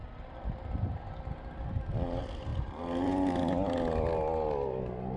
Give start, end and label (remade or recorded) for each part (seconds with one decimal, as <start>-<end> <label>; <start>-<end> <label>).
0.0-5.2 recorded